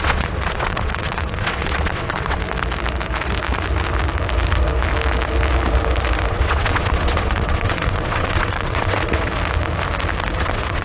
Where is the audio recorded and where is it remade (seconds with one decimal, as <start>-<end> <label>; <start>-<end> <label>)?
0.0-2.4 remade; 2.4-6.3 recorded; 6.3-9.3 remade; 9.3-10.4 recorded; 10.4-10.8 remade